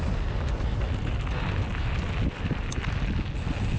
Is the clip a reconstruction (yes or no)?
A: no